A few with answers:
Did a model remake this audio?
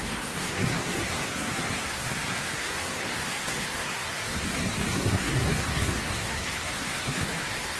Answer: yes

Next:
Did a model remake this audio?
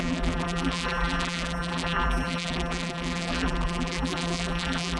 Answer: yes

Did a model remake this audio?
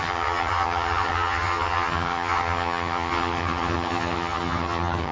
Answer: yes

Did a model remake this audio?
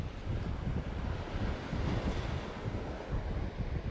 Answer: no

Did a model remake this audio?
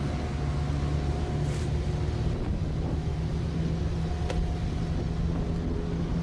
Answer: no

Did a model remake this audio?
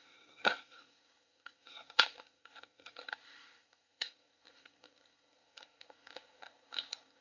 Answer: yes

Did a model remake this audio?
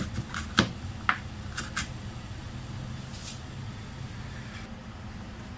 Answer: no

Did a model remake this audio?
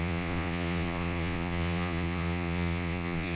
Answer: yes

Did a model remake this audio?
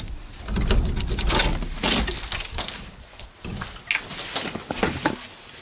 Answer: no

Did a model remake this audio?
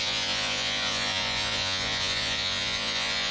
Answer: yes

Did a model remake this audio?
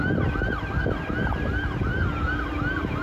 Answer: no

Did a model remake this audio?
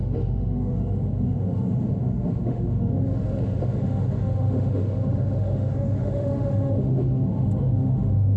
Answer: yes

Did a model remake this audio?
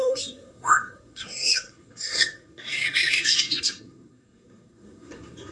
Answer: yes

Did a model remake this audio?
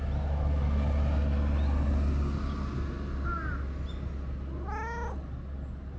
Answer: no